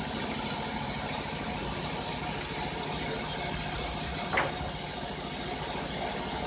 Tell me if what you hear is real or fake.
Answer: real